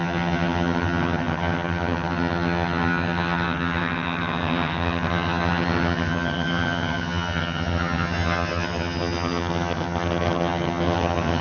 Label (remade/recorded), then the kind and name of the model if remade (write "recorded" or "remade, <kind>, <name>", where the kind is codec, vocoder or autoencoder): remade, vocoder, HiFi-GAN